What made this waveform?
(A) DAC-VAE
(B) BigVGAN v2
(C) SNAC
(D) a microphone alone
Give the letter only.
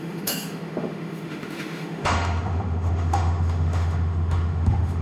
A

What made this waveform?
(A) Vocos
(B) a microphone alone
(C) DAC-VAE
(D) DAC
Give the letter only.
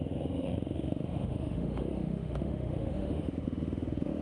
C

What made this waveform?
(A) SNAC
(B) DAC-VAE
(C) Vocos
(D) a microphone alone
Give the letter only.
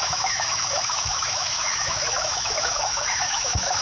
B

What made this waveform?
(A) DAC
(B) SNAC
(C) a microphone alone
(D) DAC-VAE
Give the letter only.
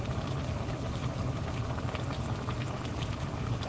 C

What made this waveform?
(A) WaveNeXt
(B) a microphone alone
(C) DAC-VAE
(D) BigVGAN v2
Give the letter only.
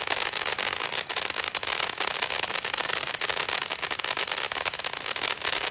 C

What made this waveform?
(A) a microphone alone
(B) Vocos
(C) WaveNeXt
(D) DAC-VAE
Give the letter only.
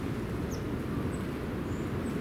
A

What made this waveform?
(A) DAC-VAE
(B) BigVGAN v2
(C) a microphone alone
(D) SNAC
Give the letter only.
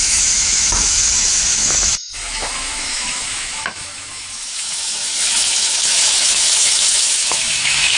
A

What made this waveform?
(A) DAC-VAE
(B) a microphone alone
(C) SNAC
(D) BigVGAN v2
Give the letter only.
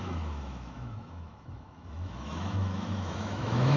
A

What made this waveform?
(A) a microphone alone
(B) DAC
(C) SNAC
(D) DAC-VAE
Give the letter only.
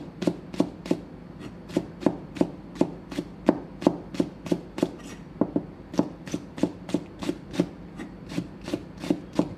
A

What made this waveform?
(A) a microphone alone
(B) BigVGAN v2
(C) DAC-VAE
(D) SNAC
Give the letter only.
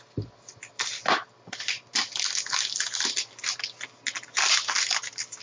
A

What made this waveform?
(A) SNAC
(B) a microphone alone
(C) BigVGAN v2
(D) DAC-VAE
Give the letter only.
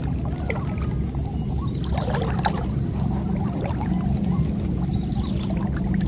B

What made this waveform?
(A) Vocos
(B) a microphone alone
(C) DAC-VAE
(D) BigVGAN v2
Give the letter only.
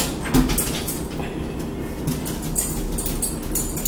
B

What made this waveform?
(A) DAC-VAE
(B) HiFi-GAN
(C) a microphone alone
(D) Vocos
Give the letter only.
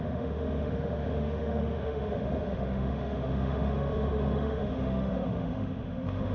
A